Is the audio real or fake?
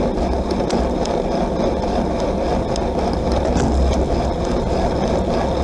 real